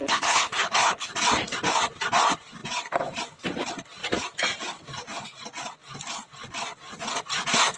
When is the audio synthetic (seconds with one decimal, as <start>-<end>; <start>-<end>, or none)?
0.0-1.1